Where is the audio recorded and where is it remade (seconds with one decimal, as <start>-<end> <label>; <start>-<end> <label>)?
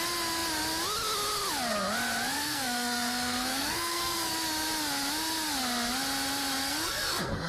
0.0-2.4 recorded; 2.4-4.3 remade; 4.3-6.6 recorded; 6.6-7.5 remade